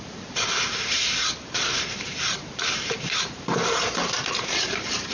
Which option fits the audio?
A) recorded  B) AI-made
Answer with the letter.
B